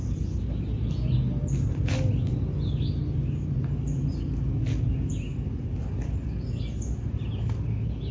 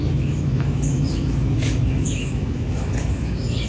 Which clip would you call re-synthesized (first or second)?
second